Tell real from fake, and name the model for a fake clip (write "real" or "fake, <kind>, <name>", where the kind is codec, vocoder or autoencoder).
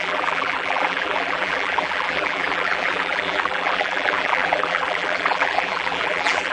fake, vocoder, BigVGAN v2